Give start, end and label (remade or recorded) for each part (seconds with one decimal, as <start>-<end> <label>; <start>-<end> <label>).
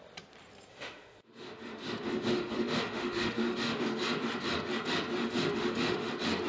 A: 0.0-0.7 recorded; 0.7-3.8 remade; 3.8-5.2 recorded; 5.2-6.1 remade; 6.1-6.5 recorded